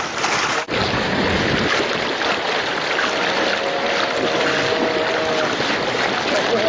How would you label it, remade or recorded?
recorded